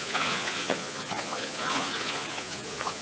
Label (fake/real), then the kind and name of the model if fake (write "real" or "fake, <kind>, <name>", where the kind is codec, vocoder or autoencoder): fake, vocoder, Vocos